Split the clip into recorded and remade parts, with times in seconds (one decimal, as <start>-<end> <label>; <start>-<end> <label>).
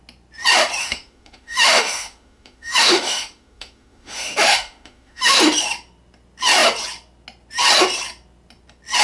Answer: 0.0-0.8 recorded; 0.8-5.4 remade; 5.4-9.0 recorded